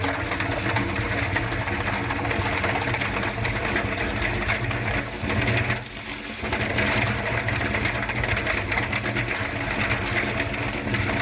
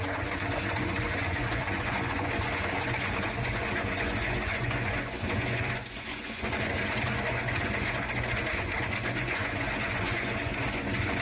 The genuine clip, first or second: first